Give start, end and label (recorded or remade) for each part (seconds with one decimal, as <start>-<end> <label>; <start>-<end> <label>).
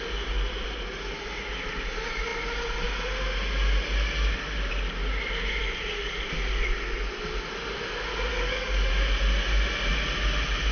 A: 0.0-8.3 recorded; 8.3-8.9 remade; 8.9-10.7 recorded